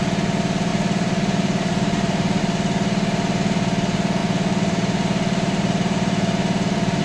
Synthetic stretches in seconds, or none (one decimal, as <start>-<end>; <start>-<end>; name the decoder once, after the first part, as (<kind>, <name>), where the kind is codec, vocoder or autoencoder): 0.7-2.4 (vocoder, BigVGAN v2); 4.2-7.0